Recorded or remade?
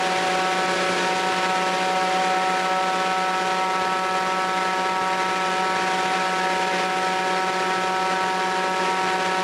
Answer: recorded